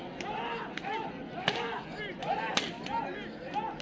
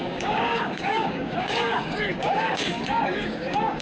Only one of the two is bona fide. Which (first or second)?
first